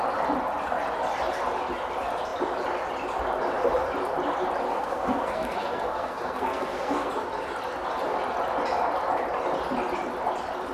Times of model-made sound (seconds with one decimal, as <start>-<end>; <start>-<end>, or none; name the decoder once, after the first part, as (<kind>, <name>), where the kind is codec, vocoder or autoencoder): 4.7-7.1 (codec, SNAC)